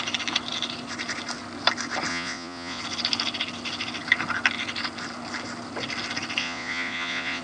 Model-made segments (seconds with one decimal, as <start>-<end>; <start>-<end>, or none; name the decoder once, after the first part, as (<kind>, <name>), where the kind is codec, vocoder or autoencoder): 2.1-2.8 (vocoder, Vocos); 6.4-7.4